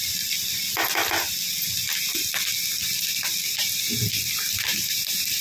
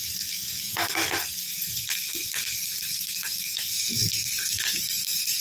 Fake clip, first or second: second